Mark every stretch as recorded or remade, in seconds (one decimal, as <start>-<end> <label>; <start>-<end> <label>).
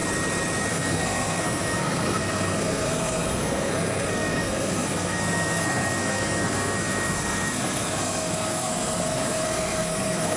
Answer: 0.0-0.7 recorded; 0.7-10.4 remade